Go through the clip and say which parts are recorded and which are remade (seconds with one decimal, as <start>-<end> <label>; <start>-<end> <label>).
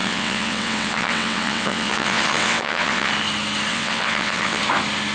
0.0-3.1 remade; 3.1-3.7 recorded; 3.7-4.6 remade; 4.6-5.1 recorded